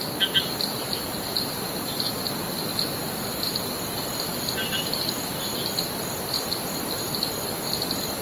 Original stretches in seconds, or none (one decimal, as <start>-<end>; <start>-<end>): 0.0-8.2